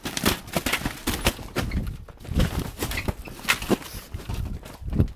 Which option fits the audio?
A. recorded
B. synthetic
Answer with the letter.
A